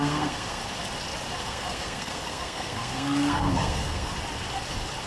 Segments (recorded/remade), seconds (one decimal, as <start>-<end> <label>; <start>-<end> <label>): 0.0-0.6 remade; 0.6-1.4 recorded; 1.4-4.1 remade; 4.1-5.1 recorded